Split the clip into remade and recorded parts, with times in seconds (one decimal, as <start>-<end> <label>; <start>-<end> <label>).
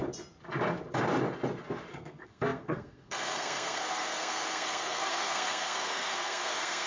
0.0-1.9 recorded; 1.9-6.9 remade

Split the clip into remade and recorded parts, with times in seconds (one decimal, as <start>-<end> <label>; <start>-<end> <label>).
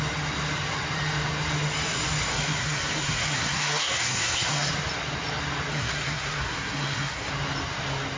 0.0-2.3 recorded; 2.3-4.7 remade; 4.7-5.7 recorded; 5.7-7.3 remade; 7.3-8.2 recorded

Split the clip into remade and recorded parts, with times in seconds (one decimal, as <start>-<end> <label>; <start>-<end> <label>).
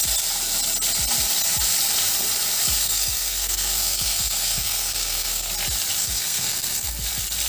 0.0-2.8 recorded; 2.8-5.5 remade; 5.5-6.0 recorded; 6.0-6.9 remade; 6.9-7.5 recorded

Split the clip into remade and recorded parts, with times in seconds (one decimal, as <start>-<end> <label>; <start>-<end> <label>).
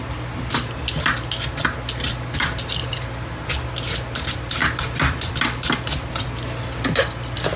0.0-7.6 recorded